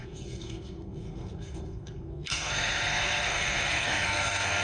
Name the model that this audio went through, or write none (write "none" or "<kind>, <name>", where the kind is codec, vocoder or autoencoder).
codec, SNAC